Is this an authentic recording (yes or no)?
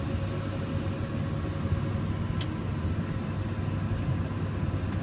yes